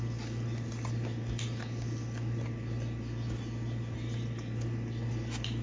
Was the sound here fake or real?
real